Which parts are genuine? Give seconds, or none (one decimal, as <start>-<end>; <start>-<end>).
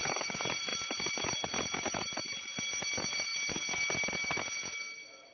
0.0-5.3